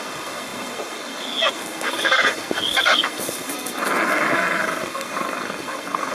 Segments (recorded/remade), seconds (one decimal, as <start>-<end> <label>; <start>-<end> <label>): 0.0-6.1 remade